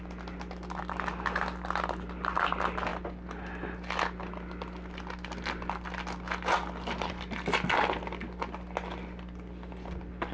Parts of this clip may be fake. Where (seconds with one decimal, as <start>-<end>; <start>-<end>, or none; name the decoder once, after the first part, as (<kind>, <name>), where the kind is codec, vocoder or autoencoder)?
none